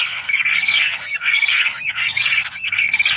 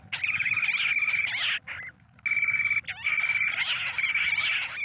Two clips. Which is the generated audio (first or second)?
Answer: first